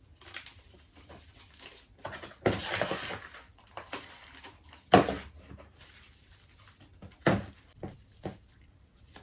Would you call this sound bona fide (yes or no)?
yes